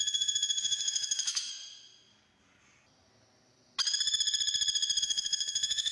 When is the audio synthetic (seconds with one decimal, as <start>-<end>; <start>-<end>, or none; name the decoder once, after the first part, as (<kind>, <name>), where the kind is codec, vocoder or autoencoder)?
0.0-1.5 (autoencoder, DAC-VAE); 5.0-5.9